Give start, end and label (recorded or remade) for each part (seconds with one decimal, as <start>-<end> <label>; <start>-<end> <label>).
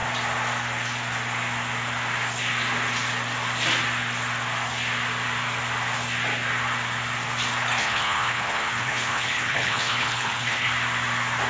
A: 0.0-7.8 recorded; 7.8-10.7 remade; 10.7-11.5 recorded